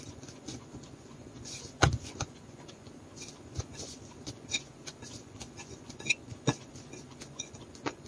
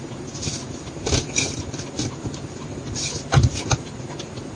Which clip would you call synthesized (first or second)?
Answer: first